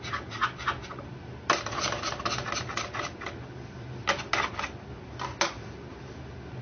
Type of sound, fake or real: real